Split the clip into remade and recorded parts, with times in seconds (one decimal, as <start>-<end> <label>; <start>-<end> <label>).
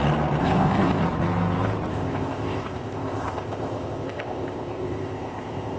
0.0-0.4 recorded; 0.4-1.0 remade; 1.0-1.9 recorded; 1.9-5.8 remade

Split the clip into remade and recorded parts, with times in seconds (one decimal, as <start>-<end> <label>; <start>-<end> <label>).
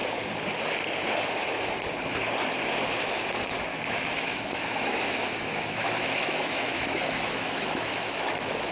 0.0-3.7 recorded; 3.7-8.7 remade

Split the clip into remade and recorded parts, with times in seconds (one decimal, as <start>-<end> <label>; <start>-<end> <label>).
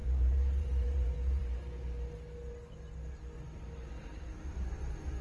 0.0-1.4 remade; 1.4-4.5 recorded; 4.5-5.2 remade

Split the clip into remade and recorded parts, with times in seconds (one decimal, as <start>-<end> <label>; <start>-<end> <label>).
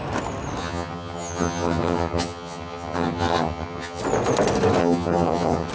0.0-0.6 recorded; 0.6-4.0 remade; 4.0-4.8 recorded; 4.8-5.7 remade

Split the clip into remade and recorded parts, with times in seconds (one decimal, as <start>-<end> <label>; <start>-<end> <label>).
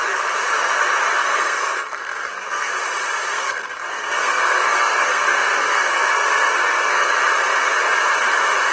0.0-1.0 recorded; 1.0-2.7 remade; 2.7-3.3 recorded; 3.3-7.2 remade; 7.2-8.7 recorded